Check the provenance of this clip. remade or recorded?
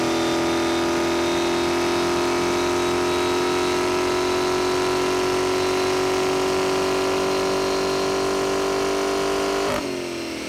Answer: recorded